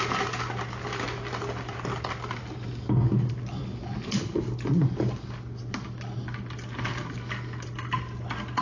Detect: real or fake real